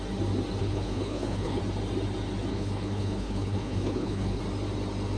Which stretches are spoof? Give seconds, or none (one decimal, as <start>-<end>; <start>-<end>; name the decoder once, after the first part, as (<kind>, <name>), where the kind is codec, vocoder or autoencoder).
0.6-1.6 (codec, HILCodec); 2.5-4.4